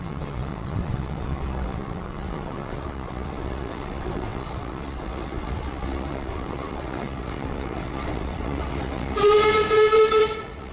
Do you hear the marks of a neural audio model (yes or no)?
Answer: yes